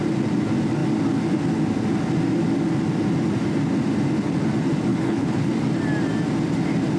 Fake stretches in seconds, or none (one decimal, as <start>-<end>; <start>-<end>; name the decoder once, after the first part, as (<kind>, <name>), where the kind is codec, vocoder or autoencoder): 4.9-5.5 (codec, HILCodec)